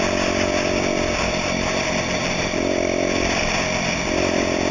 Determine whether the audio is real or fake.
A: real